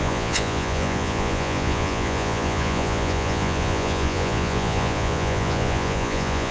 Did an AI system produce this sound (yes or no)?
yes